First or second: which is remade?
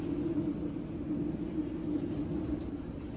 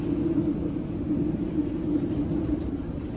second